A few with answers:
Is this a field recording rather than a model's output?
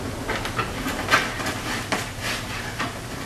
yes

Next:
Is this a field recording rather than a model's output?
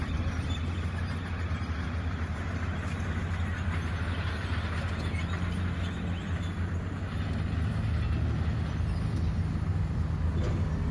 yes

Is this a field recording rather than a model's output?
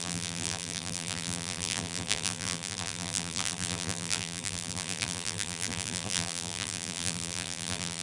no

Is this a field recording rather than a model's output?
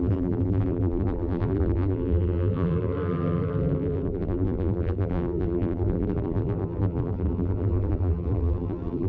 no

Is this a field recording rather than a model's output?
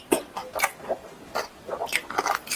yes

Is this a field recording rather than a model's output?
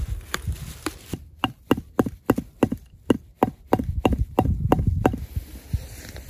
yes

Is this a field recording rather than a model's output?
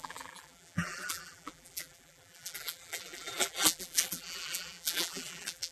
no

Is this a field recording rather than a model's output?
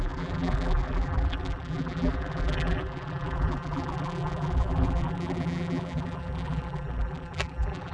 no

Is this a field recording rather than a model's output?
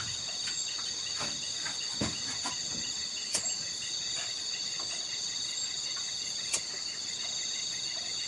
yes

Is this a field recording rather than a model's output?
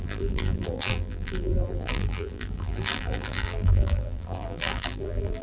no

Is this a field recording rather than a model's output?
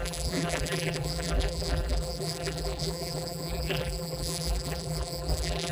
no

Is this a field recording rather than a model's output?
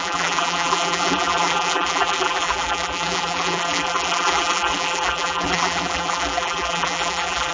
no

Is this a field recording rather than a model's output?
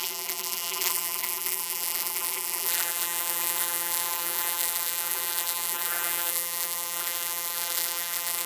no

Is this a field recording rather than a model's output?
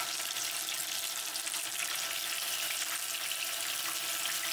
yes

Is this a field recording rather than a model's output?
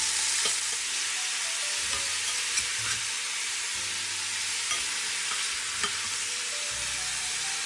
yes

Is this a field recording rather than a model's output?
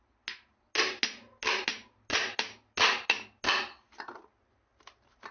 yes